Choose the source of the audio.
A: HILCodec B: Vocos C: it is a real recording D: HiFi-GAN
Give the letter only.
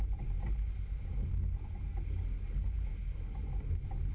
C